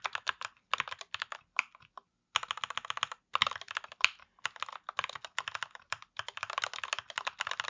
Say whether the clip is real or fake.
real